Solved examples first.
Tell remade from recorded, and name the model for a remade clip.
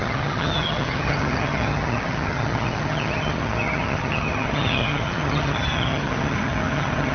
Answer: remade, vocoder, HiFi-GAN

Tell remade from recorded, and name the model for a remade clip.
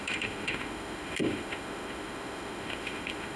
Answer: remade, autoencoder, DAC-VAE